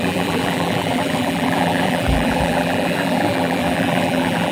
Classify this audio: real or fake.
fake